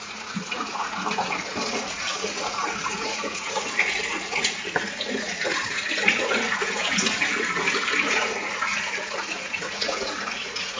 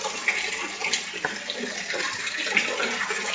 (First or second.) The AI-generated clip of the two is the first